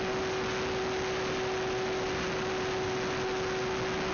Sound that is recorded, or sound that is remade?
recorded